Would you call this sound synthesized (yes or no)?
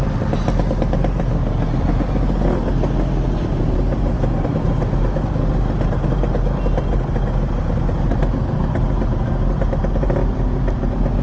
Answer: no